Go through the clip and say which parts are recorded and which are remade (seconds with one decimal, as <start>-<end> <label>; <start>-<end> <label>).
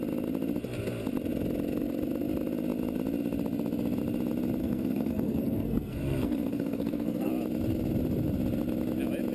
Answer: 0.0-4.6 recorded; 4.6-7.3 remade; 7.3-9.3 recorded